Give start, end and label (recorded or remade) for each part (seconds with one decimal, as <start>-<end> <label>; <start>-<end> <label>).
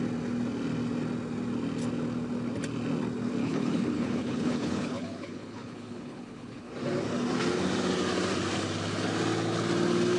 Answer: 0.0-3.4 recorded; 3.4-6.7 remade; 6.7-10.2 recorded